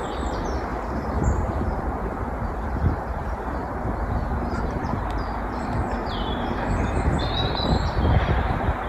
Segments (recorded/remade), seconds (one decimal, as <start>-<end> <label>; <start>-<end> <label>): 0.0-8.9 remade